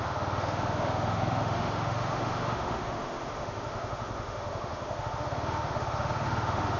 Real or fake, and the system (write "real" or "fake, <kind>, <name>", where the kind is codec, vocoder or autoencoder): fake, autoencoder, DAC-VAE